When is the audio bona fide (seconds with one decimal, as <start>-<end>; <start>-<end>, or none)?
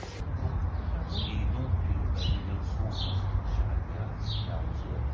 0.0-5.1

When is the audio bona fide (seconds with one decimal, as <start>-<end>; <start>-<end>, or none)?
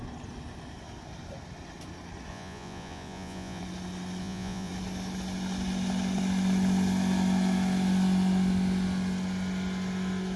0.0-2.3; 3.6-4.2; 4.7-10.4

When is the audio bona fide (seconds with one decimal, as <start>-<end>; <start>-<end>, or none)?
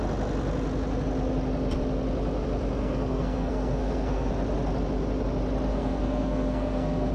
0.0-2.8; 4.3-5.7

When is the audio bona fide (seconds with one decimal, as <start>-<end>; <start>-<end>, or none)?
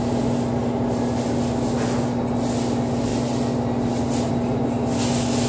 0.0-5.5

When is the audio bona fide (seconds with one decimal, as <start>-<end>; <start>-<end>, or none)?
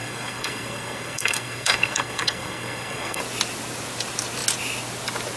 3.2-5.4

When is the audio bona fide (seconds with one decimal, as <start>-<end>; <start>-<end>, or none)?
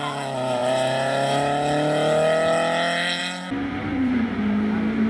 0.0-3.9; 4.4-5.1